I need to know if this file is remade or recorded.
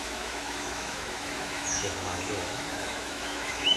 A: remade